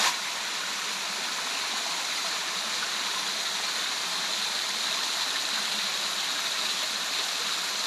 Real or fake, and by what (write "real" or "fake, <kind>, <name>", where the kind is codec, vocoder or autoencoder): real